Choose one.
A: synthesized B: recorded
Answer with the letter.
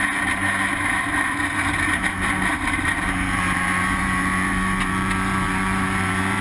A